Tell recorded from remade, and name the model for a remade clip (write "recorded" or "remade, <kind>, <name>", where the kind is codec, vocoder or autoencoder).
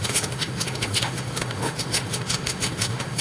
remade, autoencoder, DAC-VAE